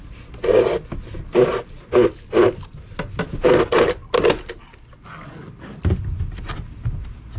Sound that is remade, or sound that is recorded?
recorded